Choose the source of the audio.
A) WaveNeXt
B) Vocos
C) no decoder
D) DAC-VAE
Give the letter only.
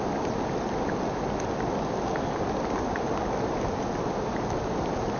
C